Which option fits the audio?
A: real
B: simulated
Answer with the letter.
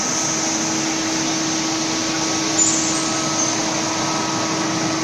A